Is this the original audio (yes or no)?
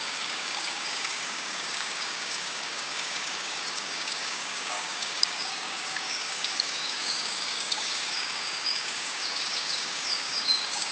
no